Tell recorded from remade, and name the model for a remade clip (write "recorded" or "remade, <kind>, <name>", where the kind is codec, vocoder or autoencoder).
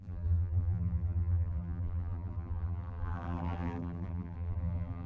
remade, vocoder, BigVGAN v2